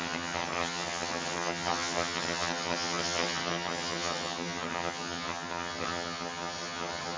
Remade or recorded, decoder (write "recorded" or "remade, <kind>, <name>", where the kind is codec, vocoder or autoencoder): remade, vocoder, HiFi-GAN